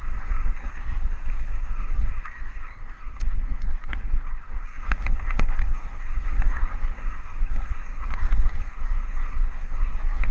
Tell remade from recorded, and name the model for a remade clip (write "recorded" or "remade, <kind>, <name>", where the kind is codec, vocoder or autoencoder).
remade, codec, SNAC